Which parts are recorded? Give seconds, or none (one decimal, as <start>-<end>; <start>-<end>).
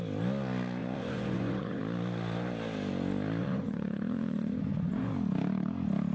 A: 0.0-0.8; 1.8-3.4; 5.1-6.1